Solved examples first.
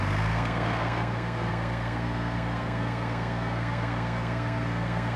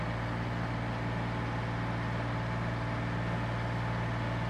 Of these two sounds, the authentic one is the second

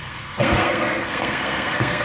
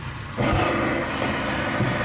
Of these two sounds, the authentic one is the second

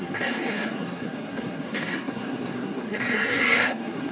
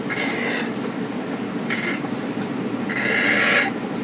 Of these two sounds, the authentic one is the second